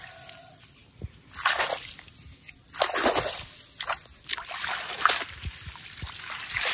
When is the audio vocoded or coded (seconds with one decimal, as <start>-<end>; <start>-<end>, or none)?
none